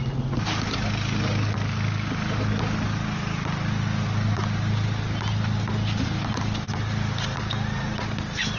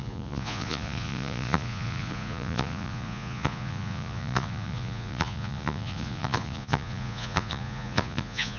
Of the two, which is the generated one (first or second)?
second